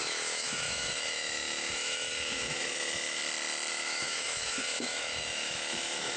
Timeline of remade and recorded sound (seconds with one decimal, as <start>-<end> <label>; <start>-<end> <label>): 0.0-3.2 remade; 3.2-3.7 recorded; 3.7-6.2 remade